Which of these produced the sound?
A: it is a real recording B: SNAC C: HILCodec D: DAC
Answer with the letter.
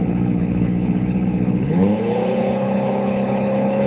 C